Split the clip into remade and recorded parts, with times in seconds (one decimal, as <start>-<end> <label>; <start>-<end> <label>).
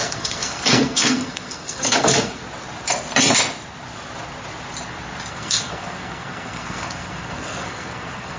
0.0-2.4 remade; 2.4-5.3 recorded; 5.3-8.4 remade